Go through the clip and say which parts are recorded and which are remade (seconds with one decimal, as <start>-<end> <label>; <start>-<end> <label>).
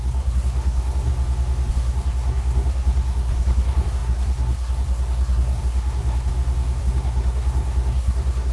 0.0-1.1 remade; 1.1-1.7 recorded; 1.7-6.3 remade; 6.3-6.8 recorded; 6.8-8.5 remade